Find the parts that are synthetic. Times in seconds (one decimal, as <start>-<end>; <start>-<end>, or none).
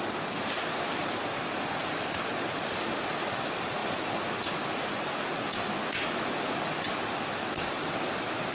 none